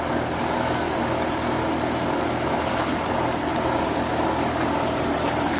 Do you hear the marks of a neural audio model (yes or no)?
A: no